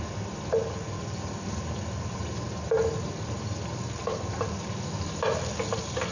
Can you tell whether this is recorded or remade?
recorded